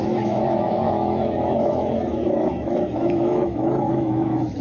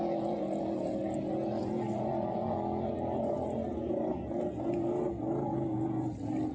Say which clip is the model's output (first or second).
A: first